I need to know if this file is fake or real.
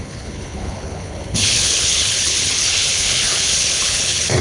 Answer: fake